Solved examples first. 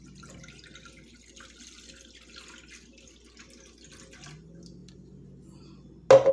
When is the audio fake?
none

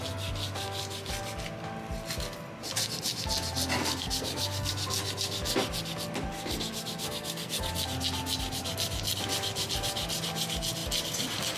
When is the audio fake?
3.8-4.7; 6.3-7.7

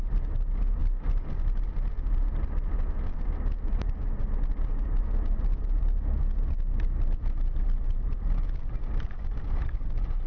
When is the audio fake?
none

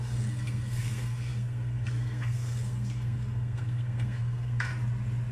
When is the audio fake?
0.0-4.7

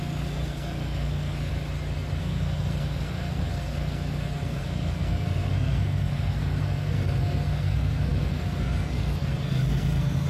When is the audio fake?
0.0-1.5; 2.2-10.3